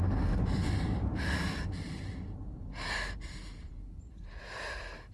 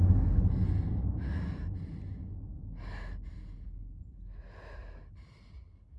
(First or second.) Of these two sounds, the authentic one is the second